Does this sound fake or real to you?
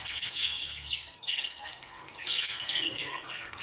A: fake